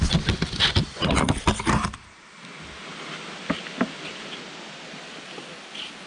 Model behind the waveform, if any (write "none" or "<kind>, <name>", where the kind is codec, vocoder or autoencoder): none